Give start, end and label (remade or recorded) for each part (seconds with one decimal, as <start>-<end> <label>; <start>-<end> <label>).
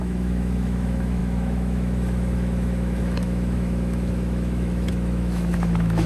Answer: 0.0-6.1 remade